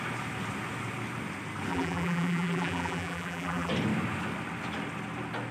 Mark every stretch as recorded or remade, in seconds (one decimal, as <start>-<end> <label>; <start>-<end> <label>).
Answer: 0.0-1.7 recorded; 1.7-3.7 remade; 3.7-5.5 recorded